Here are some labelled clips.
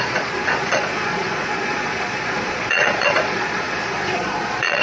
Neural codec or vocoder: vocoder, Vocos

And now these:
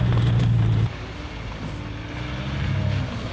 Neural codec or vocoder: none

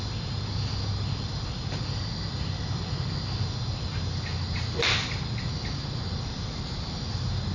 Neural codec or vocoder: none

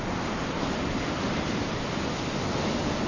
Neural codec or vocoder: none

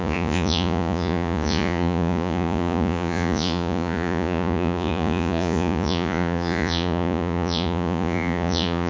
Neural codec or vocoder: vocoder, Vocos